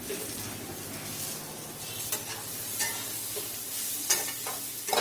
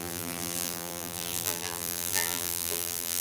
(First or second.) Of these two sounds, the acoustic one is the first